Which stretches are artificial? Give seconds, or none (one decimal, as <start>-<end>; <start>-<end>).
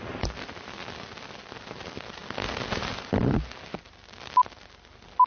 none